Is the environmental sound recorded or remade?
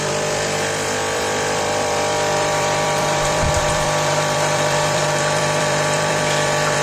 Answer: remade